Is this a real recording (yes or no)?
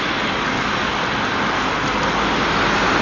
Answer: no